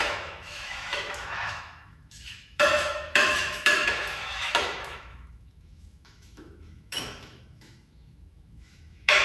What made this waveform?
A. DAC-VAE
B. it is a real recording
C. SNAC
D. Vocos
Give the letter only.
A